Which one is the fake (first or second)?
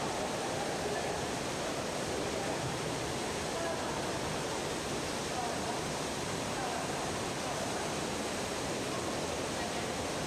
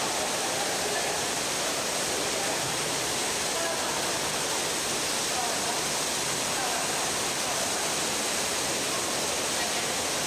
first